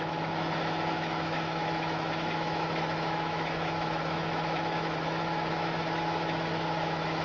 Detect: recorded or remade remade